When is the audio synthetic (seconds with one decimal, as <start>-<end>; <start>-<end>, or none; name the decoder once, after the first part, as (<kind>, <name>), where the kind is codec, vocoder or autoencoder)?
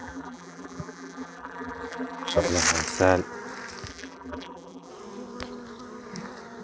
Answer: 0.0-2.5 (vocoder, BigVGAN v2); 3.9-4.9